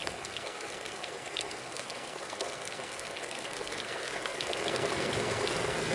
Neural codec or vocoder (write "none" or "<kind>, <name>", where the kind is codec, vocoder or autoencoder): codec, SNAC